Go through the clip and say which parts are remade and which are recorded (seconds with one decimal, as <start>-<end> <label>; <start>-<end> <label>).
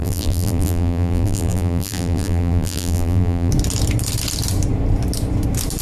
0.0-3.5 remade; 3.5-5.8 recorded